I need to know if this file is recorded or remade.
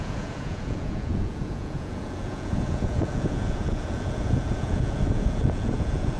remade